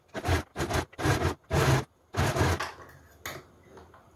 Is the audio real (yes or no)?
yes